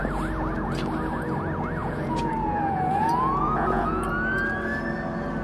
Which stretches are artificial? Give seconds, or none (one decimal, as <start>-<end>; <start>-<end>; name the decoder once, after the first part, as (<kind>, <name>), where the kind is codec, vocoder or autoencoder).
1.8-4.1 (vocoder, Vocos)

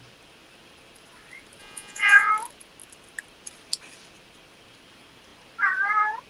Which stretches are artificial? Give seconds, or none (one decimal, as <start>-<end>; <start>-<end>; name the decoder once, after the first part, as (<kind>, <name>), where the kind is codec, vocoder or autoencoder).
1.6-2.3 (vocoder, Vocos)